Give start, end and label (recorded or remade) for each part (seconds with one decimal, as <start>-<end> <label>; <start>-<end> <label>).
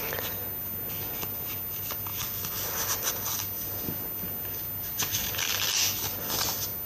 0.0-6.9 recorded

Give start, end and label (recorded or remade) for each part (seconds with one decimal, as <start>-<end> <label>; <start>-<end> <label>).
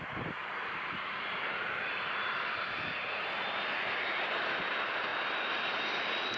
0.0-5.1 remade; 5.1-6.4 recorded